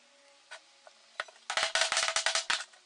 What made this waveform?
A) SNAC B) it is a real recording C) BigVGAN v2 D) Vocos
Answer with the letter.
B